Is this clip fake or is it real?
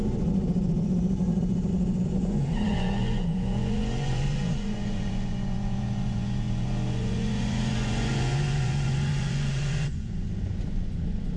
fake